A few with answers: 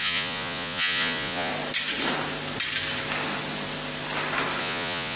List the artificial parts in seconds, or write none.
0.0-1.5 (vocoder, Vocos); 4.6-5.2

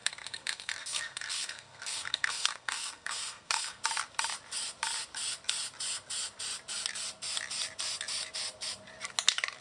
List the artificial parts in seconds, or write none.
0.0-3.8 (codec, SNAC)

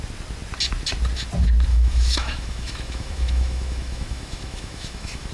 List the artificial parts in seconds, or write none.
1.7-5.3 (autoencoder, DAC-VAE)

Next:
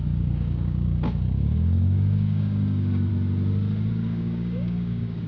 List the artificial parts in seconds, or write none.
0.0-3.1 (codec, DAC); 3.9-5.3

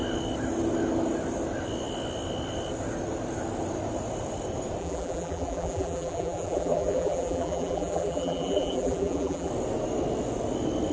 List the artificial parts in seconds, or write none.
4.8-9.5 (vocoder, BigVGAN v2)

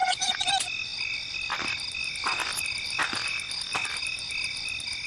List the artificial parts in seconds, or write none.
0.0-0.5 (vocoder, Vocos)